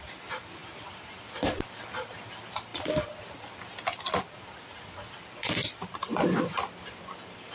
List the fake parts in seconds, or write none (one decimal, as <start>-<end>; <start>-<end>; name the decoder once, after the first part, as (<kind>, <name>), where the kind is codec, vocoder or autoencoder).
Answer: none

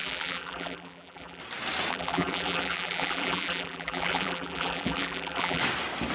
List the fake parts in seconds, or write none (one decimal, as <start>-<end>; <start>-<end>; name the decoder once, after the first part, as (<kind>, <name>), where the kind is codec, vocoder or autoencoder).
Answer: 0.0-1.4 (vocoder, BigVGAN v2); 1.9-5.6